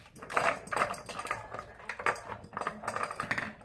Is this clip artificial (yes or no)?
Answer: no